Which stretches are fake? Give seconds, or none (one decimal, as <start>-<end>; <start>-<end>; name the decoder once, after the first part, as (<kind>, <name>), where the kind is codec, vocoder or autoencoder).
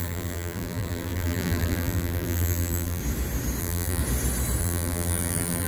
0.0-3.0 (vocoder, BigVGAN v2); 3.6-4.0; 4.6-5.7